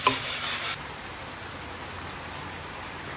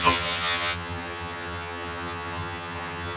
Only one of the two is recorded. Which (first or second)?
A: first